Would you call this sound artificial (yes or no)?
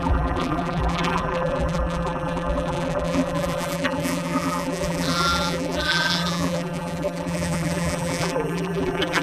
yes